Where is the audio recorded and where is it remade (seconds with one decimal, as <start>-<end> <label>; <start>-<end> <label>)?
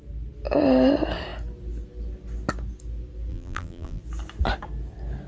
0.0-3.3 recorded; 3.3-4.0 remade; 4.0-5.3 recorded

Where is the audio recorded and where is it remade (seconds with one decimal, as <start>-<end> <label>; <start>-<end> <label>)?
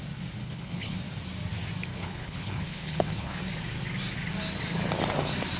0.0-0.4 recorded; 0.4-1.0 remade; 1.0-1.9 recorded; 1.9-3.4 remade; 3.4-5.6 recorded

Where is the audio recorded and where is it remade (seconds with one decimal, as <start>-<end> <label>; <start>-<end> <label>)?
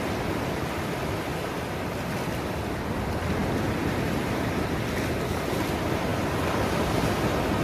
0.0-7.6 recorded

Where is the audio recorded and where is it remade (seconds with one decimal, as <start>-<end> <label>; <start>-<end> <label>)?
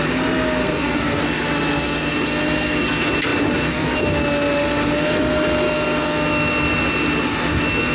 0.0-0.6 recorded; 0.6-1.2 remade; 1.2-7.9 recorded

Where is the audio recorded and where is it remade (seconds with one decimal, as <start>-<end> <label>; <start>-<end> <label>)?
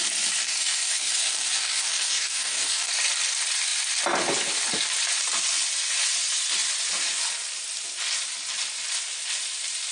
0.0-0.4 recorded; 0.4-2.9 remade; 2.9-9.9 recorded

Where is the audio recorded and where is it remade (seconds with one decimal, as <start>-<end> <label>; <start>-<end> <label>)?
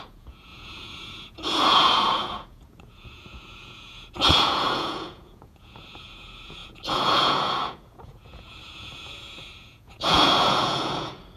0.0-11.4 remade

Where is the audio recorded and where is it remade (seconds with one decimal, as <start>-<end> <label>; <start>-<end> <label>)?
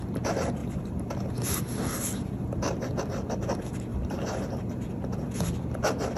0.0-0.6 recorded; 0.6-1.6 remade; 1.6-3.9 recorded; 3.9-4.9 remade; 4.9-6.2 recorded